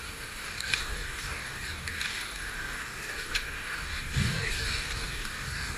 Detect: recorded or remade remade